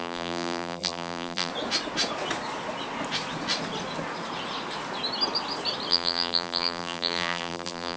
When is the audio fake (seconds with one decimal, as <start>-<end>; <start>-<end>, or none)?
0.0-1.5; 5.9-8.0